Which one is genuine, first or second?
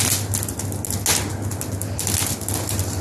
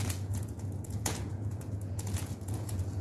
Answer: first